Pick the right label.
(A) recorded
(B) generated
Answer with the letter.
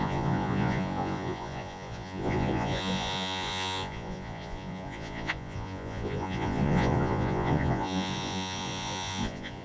B